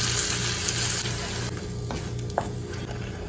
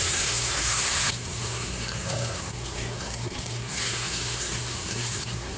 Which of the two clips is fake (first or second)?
second